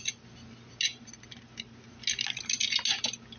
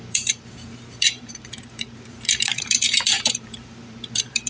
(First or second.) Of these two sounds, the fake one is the second